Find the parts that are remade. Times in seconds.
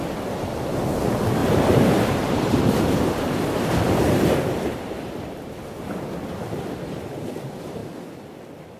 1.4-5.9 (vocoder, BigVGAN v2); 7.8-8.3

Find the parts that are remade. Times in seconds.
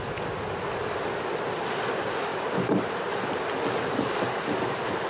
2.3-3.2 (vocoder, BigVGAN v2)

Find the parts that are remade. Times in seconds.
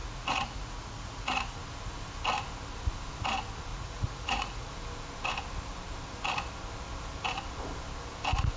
0.0-1.6 (vocoder, Vocos); 3.7-4.7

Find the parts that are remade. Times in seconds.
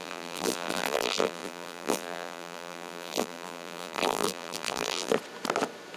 0.0-5.1 (vocoder, BigVGAN v2)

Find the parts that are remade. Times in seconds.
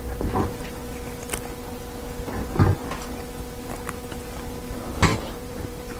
5.1-6.0 (vocoder, BigVGAN v2)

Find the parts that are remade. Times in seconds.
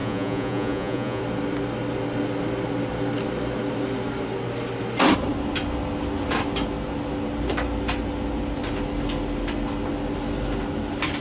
0.0-1.2 (vocoder, Vocos)